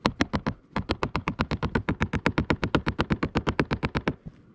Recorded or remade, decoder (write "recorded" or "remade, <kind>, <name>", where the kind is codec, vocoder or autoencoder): recorded